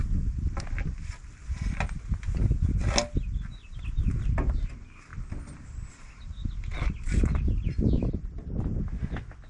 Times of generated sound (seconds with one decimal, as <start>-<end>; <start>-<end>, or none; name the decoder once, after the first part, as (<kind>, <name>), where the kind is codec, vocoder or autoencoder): none